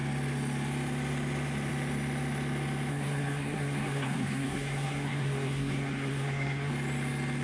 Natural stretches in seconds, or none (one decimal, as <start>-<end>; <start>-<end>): 0.0-2.9; 6.7-7.4

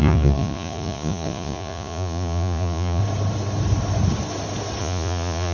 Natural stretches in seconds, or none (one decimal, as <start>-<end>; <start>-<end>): 3.0-4.8

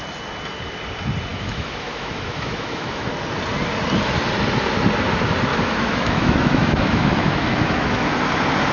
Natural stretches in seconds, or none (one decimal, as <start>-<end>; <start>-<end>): 0.0-1.3; 3.1-5.5; 8.1-8.7

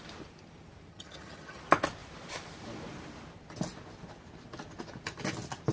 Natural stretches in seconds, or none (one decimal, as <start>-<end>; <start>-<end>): 0.0-0.9; 1.6-5.7

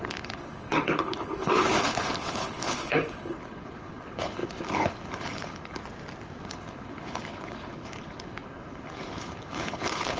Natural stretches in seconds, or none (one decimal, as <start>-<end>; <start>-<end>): 5.8-6.4

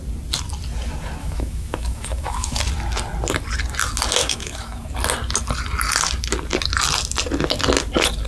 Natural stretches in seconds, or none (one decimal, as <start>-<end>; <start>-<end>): 0.0-1.2; 2.6-4.2; 4.9-8.3

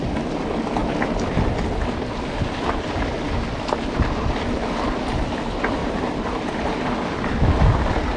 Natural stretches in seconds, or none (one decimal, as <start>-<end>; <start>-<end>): 0.0-5.8; 6.5-8.2

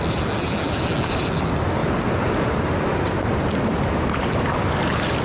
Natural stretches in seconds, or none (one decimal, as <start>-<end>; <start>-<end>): 0.0-5.2